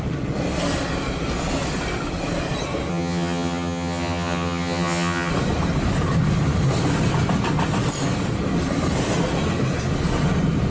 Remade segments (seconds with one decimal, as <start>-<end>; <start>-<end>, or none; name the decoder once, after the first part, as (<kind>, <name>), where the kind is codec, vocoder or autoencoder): 2.9-5.3 (vocoder, HiFi-GAN)